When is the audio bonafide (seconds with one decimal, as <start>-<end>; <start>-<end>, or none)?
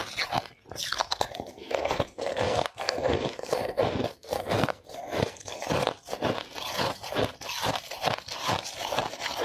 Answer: 0.0-0.9; 5.6-9.4